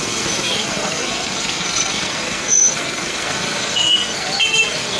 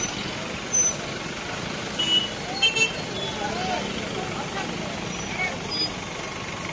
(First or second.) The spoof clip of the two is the first